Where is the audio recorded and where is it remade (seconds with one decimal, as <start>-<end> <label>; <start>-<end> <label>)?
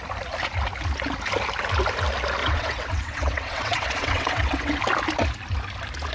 0.0-2.4 recorded; 2.4-4.8 remade; 4.8-6.1 recorded